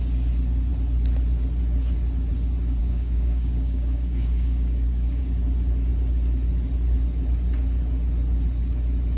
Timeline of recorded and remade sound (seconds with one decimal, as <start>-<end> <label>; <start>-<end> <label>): 0.0-2.8 recorded; 2.8-5.2 remade; 5.2-9.2 recorded